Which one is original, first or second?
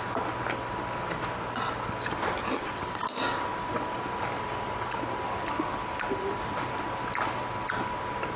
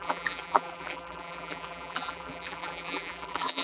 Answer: first